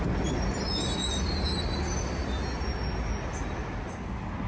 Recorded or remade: recorded